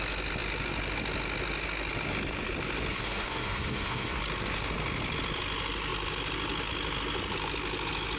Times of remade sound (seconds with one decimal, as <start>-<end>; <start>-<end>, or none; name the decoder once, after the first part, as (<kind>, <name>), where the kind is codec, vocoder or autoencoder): 2.9-4.2 (codec, SNAC)